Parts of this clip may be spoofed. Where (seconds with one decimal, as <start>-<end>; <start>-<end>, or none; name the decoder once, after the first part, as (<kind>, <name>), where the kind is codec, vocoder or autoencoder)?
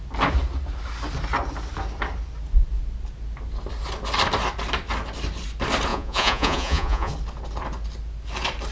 5.9-7.1 (vocoder, Vocos)